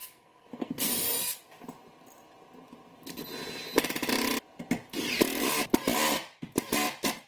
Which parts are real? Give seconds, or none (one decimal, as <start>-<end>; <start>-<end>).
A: 0.9-7.3